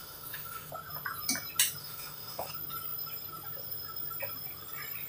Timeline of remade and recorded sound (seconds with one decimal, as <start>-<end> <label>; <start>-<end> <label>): 0.0-0.7 remade; 0.7-1.8 recorded; 1.8-2.5 remade; 2.5-5.1 recorded

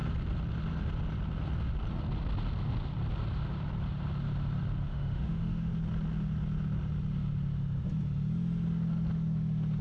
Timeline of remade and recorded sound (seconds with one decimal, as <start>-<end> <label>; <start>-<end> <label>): 0.0-4.9 recorded; 4.9-5.7 remade; 5.7-9.8 recorded

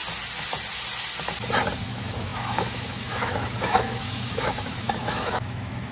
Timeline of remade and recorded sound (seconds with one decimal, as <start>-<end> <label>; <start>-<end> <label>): 0.0-1.8 recorded; 1.8-5.9 remade

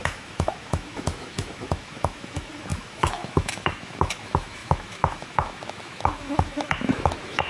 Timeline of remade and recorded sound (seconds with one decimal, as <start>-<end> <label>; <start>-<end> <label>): 0.0-7.5 remade